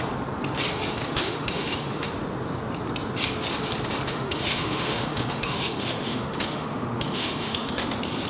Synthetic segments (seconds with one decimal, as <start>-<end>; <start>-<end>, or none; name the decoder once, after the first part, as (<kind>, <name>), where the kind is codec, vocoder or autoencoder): 0.9-2.1 (autoencoder, DAC-VAE); 4.1-7.8